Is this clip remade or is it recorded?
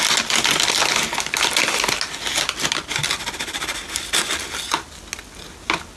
recorded